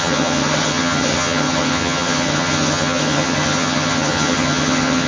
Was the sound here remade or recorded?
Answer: remade